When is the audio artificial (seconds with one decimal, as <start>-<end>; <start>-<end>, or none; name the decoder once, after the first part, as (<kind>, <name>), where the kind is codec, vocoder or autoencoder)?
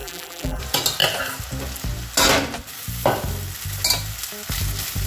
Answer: 0.0-0.6 (vocoder, BigVGAN v2)